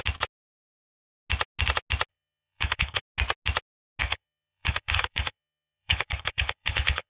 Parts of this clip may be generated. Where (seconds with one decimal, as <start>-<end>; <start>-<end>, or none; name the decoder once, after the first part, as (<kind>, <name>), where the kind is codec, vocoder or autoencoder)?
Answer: 2.1-3.0 (codec, HILCodec); 4.0-7.1